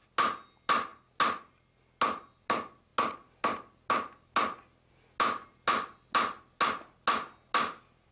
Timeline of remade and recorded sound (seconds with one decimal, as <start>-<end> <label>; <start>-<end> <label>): 0.0-8.1 recorded